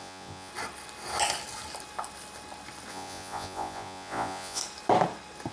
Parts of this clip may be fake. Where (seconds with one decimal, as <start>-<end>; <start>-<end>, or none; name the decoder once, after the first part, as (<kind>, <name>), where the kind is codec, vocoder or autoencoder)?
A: 0.0-0.5 (vocoder, Vocos); 2.9-4.6